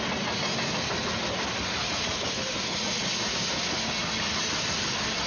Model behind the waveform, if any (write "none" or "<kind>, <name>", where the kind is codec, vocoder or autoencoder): none